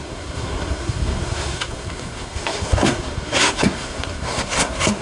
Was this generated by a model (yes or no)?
yes